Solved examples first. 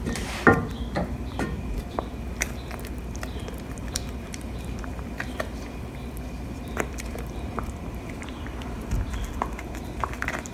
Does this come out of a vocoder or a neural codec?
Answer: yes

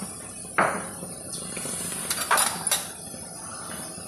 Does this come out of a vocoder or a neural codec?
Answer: no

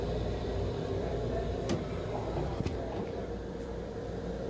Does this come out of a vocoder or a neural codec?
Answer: yes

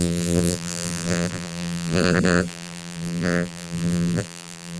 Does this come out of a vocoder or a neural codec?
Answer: yes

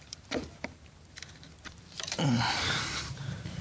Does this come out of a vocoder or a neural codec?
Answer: yes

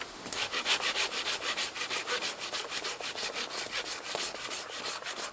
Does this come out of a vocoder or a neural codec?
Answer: no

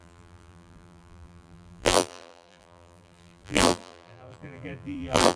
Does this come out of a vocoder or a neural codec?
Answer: yes